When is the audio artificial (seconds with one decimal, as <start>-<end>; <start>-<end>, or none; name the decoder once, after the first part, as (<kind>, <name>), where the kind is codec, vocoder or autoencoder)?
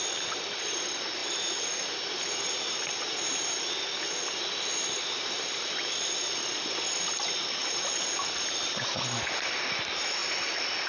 0.0-1.2 (vocoder, BigVGAN v2); 4.3-10.2